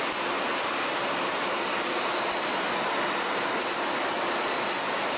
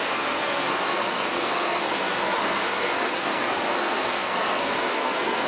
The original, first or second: first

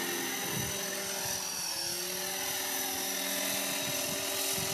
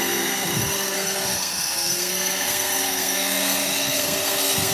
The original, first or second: first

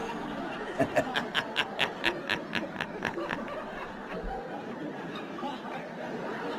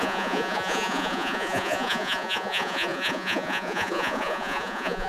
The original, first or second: first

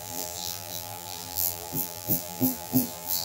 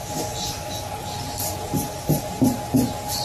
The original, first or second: second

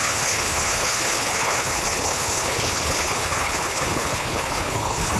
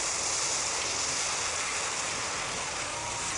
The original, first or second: second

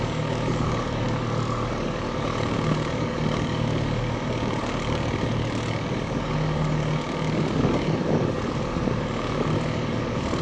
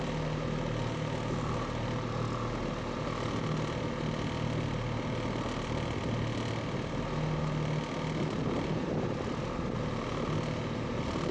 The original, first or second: second